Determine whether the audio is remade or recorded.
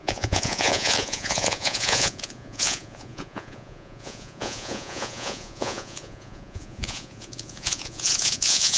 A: remade